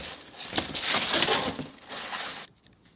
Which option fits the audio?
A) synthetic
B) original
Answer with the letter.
B